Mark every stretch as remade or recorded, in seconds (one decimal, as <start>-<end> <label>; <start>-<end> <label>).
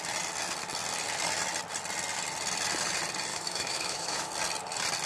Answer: 0.0-3.3 recorded; 3.3-4.3 remade; 4.3-5.1 recorded